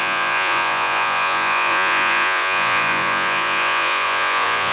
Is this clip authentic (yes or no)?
no